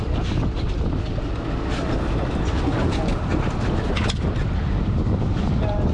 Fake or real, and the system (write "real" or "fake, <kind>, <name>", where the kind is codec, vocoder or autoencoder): real